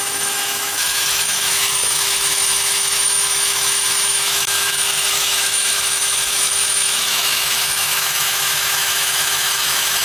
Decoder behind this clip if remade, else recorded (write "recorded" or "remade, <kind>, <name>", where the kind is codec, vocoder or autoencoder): remade, autoencoder, DAC-VAE